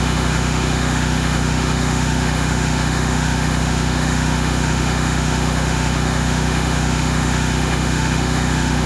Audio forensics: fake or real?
fake